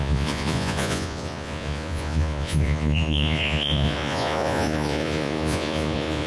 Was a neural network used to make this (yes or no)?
yes